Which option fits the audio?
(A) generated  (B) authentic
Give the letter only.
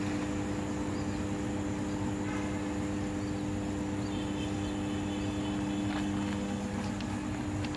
B